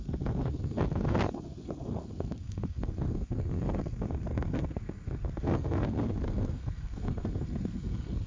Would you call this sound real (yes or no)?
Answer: no